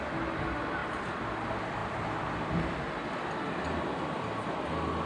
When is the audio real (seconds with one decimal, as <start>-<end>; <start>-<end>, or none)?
0.0-5.1